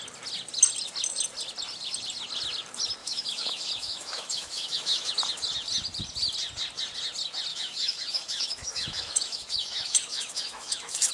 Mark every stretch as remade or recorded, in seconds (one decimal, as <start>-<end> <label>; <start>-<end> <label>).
0.0-3.0 recorded; 3.0-5.1 remade; 5.1-7.5 recorded; 7.5-11.1 remade